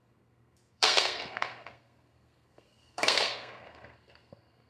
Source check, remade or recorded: remade